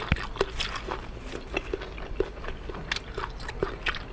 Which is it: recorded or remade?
recorded